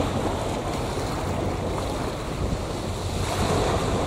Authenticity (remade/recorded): recorded